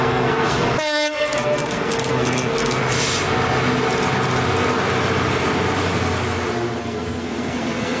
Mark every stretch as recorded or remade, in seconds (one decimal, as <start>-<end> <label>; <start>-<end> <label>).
0.0-2.8 remade; 2.8-6.8 recorded; 6.8-8.0 remade